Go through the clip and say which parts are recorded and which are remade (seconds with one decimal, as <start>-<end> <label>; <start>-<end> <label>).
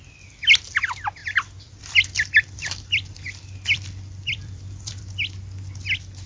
0.0-1.2 recorded; 1.2-5.0 remade; 5.0-6.3 recorded